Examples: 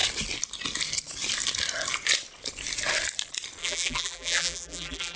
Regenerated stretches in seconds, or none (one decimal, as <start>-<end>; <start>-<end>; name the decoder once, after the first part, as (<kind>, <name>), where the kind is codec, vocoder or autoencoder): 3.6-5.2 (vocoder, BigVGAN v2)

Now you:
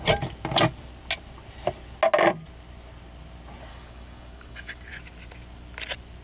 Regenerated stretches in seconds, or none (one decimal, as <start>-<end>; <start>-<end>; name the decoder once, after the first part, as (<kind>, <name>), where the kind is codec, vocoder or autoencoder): 3.7-4.9 (codec, DAC)

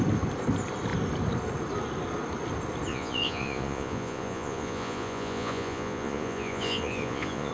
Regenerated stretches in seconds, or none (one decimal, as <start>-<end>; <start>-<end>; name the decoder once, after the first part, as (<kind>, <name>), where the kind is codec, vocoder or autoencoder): 2.9-7.5 (vocoder, Vocos)